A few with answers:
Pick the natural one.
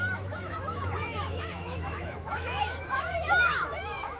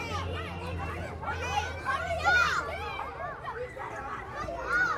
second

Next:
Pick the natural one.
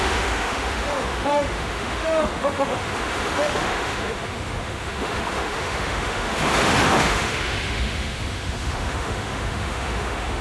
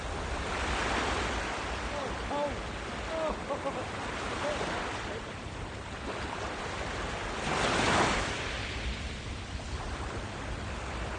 second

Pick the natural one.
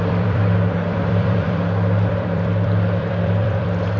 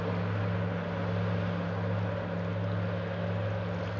second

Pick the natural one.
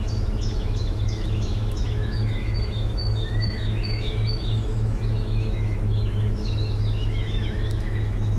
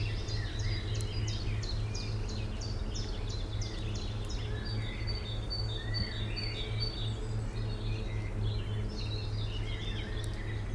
second